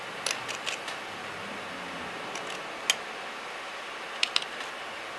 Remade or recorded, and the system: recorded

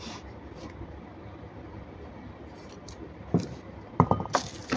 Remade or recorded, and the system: remade, vocoder, BigVGAN v2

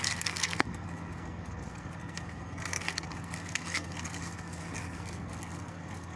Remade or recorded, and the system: remade, codec, SNAC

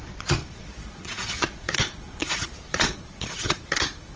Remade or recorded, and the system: remade, vocoder, Vocos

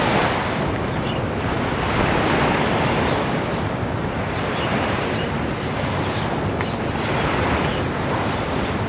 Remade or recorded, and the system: recorded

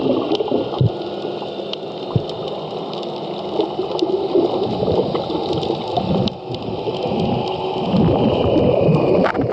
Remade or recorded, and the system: recorded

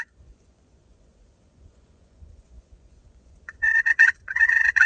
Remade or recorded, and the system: remade, vocoder, Vocos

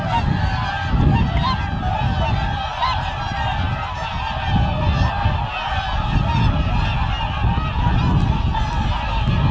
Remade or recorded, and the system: recorded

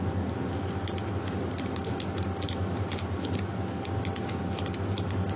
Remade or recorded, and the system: recorded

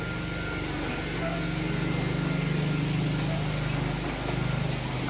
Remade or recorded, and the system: recorded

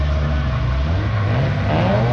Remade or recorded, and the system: recorded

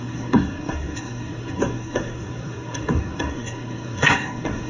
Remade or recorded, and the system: remade, codec, SNAC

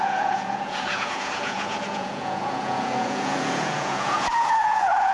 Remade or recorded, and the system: remade, vocoder, Vocos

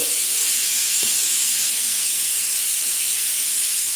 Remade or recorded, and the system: remade, codec, SNAC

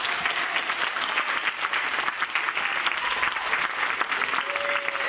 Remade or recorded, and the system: recorded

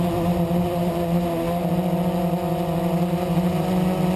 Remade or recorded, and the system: recorded